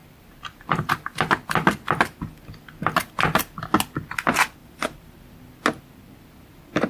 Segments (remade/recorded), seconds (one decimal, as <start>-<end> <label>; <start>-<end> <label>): 0.0-0.9 remade; 0.9-4.6 recorded; 4.6-5.2 remade; 5.2-6.9 recorded